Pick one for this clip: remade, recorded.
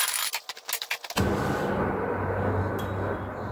recorded